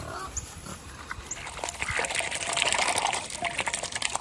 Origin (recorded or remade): remade